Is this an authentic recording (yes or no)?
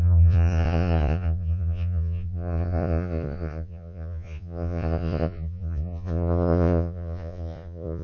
no